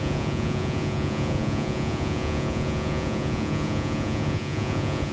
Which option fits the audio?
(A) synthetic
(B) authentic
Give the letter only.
A